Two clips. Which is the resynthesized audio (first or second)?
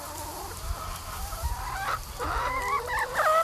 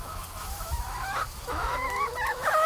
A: second